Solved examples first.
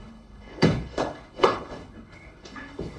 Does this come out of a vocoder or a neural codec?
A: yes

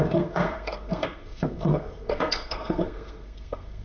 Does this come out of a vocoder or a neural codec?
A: yes